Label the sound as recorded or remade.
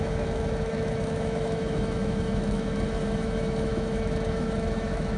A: remade